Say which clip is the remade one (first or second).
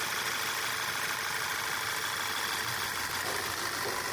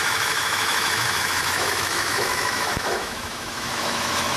second